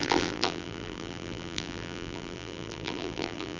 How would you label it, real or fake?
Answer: fake